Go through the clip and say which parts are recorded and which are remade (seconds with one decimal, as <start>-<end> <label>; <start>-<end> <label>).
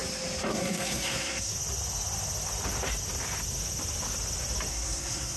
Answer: 0.0-0.5 recorded; 0.5-1.5 remade; 1.5-4.7 recorded; 4.7-5.4 remade